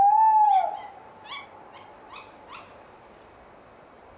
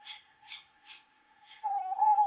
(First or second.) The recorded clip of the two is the first